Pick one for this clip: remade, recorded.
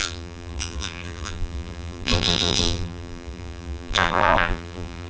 remade